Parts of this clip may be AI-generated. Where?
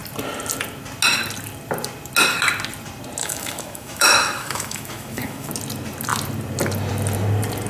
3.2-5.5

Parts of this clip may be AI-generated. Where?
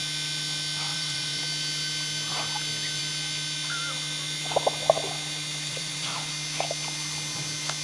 0.9-1.4; 5.7-6.3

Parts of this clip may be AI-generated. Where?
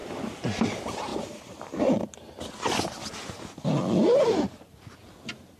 1.1-2.0; 3.8-4.6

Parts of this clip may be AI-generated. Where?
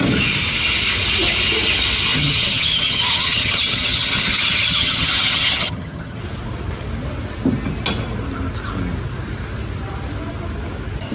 2.1-6.2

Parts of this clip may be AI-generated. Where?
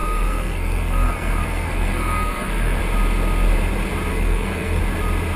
0.0-2.8; 4.1-4.8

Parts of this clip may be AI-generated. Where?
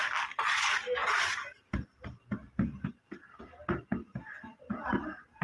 none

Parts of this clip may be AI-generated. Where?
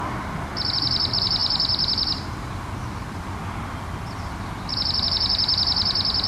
none